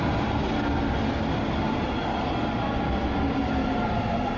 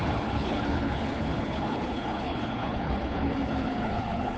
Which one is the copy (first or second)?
second